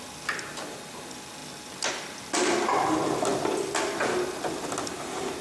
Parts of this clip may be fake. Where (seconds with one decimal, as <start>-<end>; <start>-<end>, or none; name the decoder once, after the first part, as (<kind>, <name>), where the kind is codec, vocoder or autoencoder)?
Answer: none